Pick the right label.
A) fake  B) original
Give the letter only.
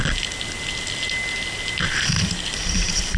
B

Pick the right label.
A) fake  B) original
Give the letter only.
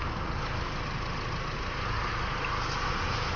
B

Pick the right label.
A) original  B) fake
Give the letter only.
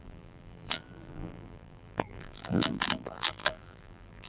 B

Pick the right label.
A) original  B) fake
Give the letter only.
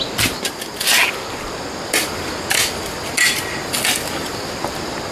A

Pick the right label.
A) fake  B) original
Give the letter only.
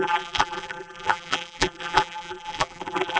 A